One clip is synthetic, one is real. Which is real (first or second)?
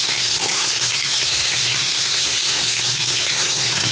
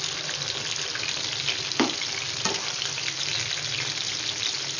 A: second